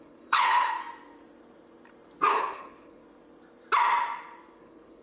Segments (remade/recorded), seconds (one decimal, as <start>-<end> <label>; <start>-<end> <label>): 0.0-0.8 remade; 0.8-2.3 recorded; 2.3-3.0 remade; 3.0-4.6 recorded; 4.6-5.0 remade